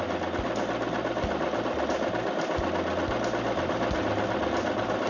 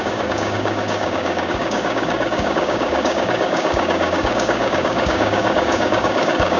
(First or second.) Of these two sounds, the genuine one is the first